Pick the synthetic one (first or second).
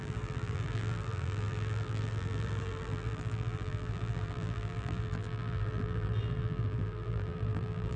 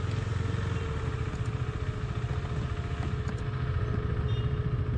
first